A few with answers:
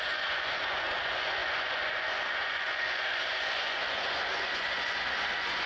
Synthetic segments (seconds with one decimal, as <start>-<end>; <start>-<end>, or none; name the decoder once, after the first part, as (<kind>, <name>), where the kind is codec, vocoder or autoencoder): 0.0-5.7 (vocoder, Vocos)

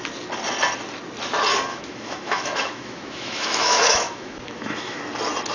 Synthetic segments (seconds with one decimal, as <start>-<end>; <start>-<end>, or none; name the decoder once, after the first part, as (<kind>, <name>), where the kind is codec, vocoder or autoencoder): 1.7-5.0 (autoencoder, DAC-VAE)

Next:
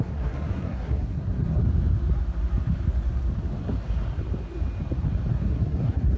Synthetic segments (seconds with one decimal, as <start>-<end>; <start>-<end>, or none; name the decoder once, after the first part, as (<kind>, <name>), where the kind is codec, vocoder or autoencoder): 0.0-1.6 (codec, SNAC); 5.3-6.2

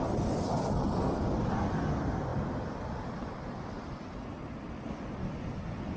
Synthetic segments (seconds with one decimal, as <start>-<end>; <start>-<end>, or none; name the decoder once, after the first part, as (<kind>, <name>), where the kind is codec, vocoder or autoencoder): none

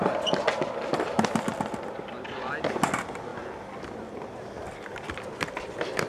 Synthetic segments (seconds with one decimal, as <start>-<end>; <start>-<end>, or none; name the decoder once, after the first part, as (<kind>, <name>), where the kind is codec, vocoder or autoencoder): none